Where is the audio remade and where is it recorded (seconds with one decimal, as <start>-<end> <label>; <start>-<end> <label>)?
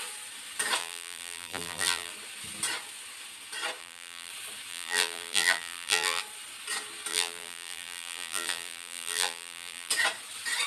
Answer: 0.0-0.8 recorded; 0.8-2.1 remade; 2.1-3.8 recorded; 3.8-4.3 remade; 4.3-4.7 recorded; 4.7-6.2 remade; 6.2-7.1 recorded; 7.1-9.9 remade; 9.9-10.7 recorded